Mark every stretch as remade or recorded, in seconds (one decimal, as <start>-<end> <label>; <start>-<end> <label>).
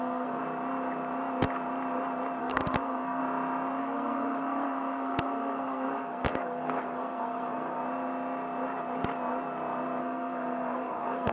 0.0-0.4 remade; 0.4-2.4 recorded; 2.4-3.2 remade; 3.2-3.8 recorded; 3.8-7.8 remade; 7.8-10.0 recorded; 10.0-11.3 remade